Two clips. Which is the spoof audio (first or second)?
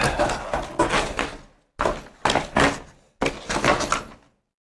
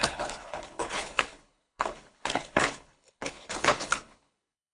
second